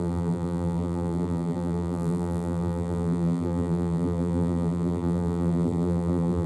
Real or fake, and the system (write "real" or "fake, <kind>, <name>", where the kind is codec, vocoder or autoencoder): fake, vocoder, BigVGAN v2